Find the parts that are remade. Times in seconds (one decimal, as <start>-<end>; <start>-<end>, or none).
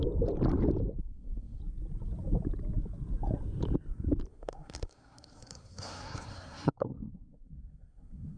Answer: 1.0-1.6; 4.3-8.4